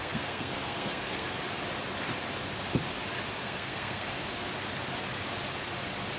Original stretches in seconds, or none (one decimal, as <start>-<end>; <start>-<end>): 1.4-3.4; 4.1-6.2